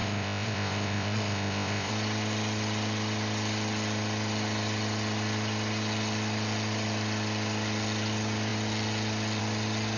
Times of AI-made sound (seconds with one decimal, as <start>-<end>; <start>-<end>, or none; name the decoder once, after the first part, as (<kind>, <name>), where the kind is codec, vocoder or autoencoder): 0.0-1.9 (codec, ZipCodec)